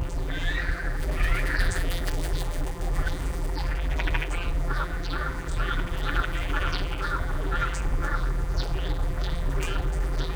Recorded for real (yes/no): no